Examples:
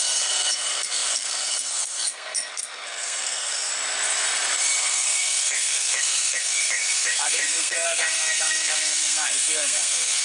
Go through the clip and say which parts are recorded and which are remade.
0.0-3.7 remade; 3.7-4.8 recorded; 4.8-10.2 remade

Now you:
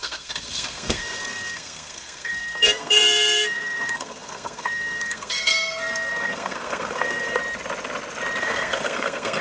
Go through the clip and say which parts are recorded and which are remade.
0.0-7.4 remade; 7.4-8.4 recorded; 8.4-9.4 remade